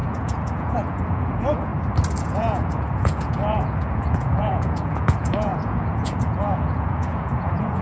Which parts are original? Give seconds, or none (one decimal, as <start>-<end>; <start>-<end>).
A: 1.7-2.2